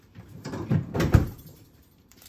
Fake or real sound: fake